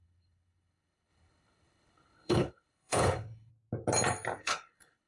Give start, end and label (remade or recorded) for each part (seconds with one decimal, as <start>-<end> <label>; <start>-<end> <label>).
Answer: 0.0-3.5 remade; 3.5-4.4 recorded; 4.4-5.1 remade